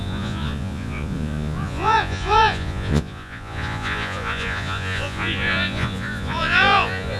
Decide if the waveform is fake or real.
fake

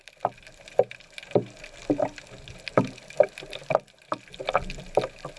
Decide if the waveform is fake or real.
real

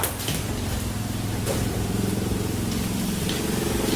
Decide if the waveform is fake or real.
fake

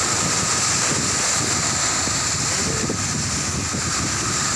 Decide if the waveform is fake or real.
real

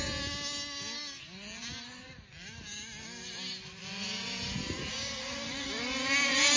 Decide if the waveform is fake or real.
real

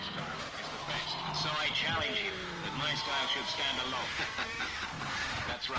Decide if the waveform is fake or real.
real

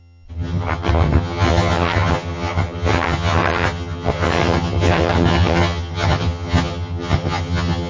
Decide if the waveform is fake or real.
fake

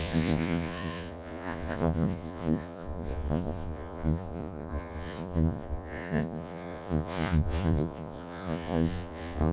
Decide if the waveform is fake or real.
fake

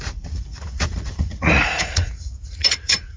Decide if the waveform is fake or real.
fake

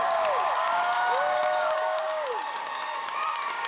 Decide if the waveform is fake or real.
fake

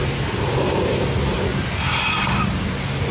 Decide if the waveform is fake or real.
real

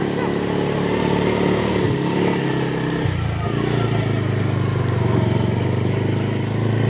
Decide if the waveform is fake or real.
real